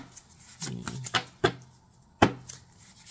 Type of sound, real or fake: real